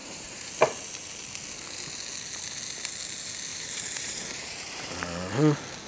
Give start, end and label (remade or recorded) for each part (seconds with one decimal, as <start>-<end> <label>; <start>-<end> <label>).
0.0-0.5 remade; 0.5-3.5 recorded; 3.5-4.9 remade; 4.9-5.9 recorded